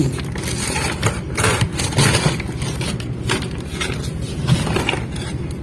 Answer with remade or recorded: recorded